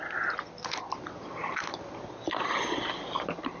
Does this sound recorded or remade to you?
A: recorded